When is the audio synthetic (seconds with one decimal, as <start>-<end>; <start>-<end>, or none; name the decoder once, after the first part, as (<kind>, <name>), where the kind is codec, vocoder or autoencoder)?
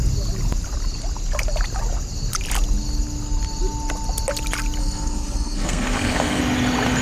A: 4.8-6.4 (codec, SNAC)